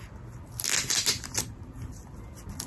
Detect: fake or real real